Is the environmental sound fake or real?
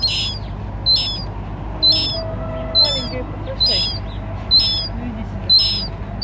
real